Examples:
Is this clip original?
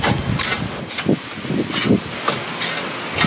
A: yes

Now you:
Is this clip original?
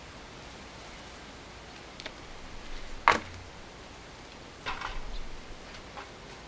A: yes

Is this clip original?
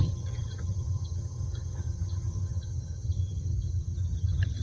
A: no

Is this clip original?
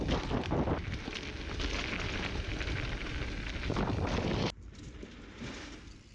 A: yes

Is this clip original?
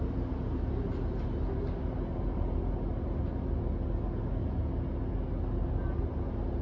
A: yes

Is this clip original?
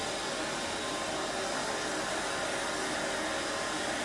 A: yes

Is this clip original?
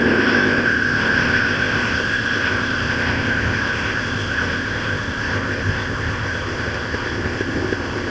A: no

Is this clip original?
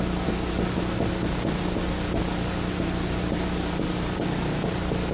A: yes